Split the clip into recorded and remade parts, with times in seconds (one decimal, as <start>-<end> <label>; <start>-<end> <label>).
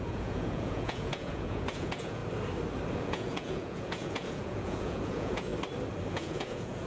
0.0-2.2 remade; 2.2-2.9 recorded; 2.9-5.5 remade; 5.5-6.1 recorded; 6.1-6.9 remade